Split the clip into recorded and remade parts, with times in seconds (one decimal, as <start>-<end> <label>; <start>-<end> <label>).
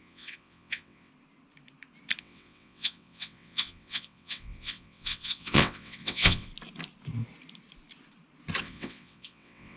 0.0-1.1 remade; 1.1-2.2 recorded; 2.2-6.5 remade; 6.5-8.6 recorded; 8.6-9.8 remade